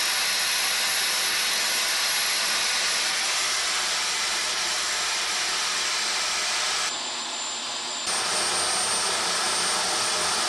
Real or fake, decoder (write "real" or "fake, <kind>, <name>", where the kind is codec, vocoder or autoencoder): real